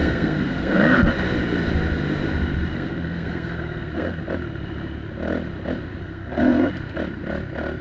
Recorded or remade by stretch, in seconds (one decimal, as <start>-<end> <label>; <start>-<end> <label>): 0.0-1.1 remade; 1.1-2.7 recorded; 2.7-4.2 remade; 4.2-6.0 recorded; 6.0-6.7 remade; 6.7-7.8 recorded